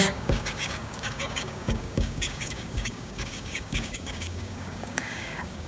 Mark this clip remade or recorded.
remade